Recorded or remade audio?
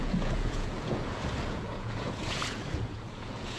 remade